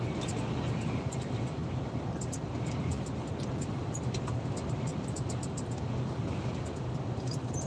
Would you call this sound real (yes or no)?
yes